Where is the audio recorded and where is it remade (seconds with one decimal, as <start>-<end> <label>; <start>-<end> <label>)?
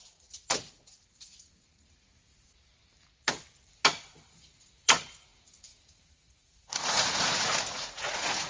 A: 0.0-2.2 remade; 2.2-4.3 recorded; 4.3-8.5 remade